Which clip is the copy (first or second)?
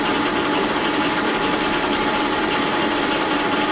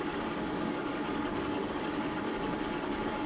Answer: second